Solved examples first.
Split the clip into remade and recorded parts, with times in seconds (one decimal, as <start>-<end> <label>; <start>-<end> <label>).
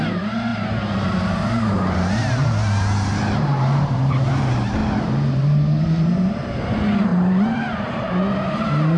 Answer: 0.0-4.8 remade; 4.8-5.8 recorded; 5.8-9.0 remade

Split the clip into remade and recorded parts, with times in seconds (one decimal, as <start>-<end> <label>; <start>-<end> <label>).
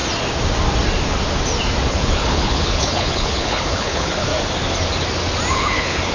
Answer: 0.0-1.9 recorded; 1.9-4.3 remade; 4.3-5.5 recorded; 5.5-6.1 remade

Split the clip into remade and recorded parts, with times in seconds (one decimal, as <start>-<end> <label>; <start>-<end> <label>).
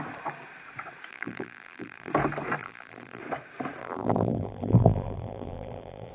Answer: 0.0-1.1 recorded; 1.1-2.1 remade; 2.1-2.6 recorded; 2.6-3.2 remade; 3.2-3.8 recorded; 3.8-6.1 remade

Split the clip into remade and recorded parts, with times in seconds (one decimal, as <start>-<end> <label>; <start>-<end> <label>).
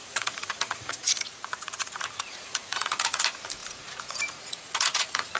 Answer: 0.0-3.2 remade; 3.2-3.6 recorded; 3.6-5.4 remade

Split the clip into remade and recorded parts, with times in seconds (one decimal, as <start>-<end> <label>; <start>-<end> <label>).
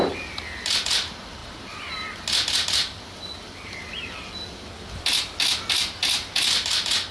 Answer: 0.0-7.1 recorded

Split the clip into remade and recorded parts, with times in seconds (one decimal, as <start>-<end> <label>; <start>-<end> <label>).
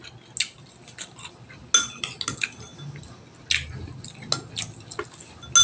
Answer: 0.0-5.6 recorded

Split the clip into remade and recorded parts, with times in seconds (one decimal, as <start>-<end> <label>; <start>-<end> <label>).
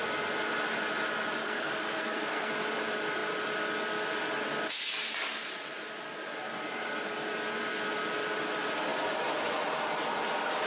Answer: 0.0-1.4 recorded; 1.4-2.5 remade; 2.5-10.7 recorded